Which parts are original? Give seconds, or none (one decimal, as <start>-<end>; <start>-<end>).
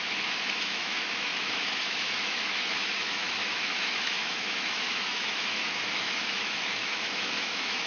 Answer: none